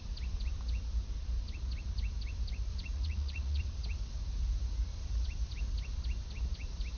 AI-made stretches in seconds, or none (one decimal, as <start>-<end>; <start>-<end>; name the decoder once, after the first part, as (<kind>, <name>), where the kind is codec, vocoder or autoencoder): 2.7-3.6 (vocoder, Vocos)